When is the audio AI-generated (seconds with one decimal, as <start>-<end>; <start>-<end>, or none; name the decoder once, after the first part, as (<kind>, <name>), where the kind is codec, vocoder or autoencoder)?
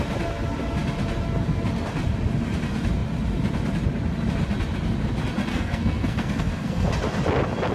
5.5-6.9 (codec, SNAC)